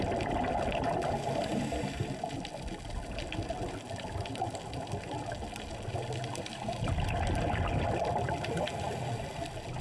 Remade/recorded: recorded